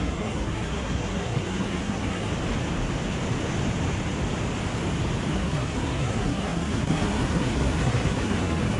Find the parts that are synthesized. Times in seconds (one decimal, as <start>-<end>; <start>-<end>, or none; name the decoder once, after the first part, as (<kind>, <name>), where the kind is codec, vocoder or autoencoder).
0.0-2.3 (codec, SNAC); 5.3-8.8